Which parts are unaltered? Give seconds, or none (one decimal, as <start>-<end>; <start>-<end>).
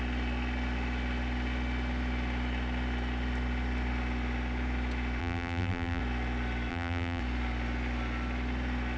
0.0-5.2; 6.0-6.7; 7.2-9.0